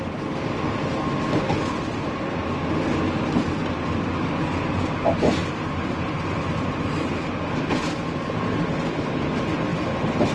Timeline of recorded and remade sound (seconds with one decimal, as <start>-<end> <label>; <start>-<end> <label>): 0.0-5.4 recorded; 5.4-6.1 remade; 6.1-9.7 recorded; 9.7-10.3 remade